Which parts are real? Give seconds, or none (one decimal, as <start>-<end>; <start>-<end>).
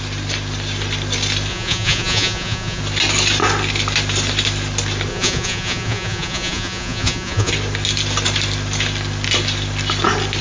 0.0-1.5; 2.8-5.1; 7.5-10.4